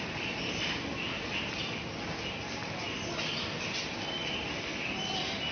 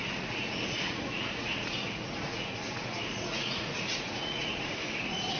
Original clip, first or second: first